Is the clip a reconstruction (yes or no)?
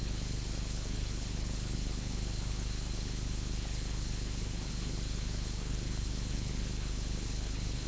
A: yes